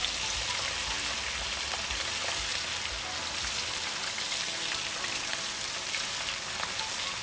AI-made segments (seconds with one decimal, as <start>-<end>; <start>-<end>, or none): none